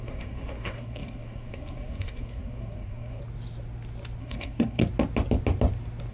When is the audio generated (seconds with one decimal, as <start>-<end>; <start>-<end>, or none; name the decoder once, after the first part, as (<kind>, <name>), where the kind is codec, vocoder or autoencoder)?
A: 0.0-3.2 (codec, SNAC); 4.2-4.8